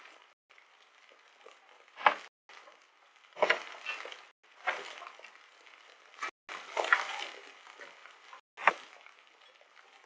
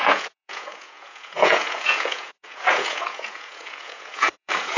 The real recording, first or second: first